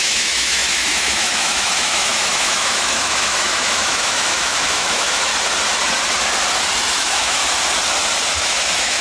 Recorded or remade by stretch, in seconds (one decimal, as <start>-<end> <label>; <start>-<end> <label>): 0.0-5.3 remade; 5.3-7.0 recorded; 7.0-7.4 remade; 7.4-8.4 recorded; 8.4-9.0 remade